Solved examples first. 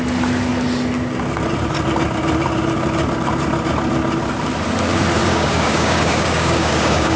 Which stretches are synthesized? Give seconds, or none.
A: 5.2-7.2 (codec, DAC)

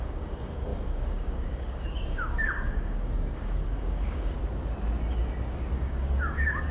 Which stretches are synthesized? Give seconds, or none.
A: 0.0-4.4 (codec, DAC); 5.7-6.7

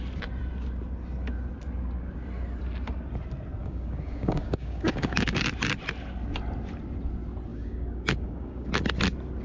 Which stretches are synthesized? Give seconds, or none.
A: 3.6-5.4 (codec, DAC); 7.5-8.7

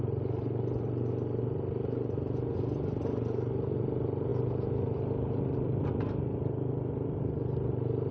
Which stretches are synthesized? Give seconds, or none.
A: none